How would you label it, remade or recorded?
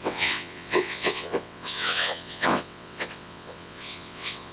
remade